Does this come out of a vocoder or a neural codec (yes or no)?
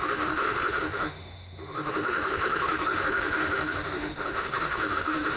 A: yes